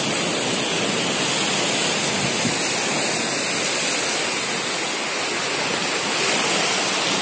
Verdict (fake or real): real